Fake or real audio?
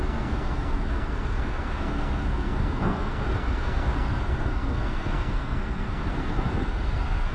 fake